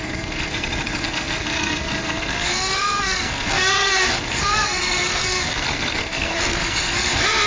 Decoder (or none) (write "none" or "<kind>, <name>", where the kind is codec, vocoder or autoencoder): codec, SNAC